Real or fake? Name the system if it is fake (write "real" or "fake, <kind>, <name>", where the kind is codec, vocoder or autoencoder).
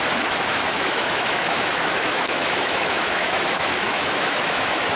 fake, autoencoder, DAC-VAE